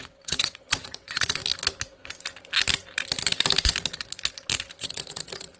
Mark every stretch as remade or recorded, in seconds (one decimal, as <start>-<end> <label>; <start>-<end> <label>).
0.0-1.4 remade; 1.4-4.8 recorded; 4.8-5.6 remade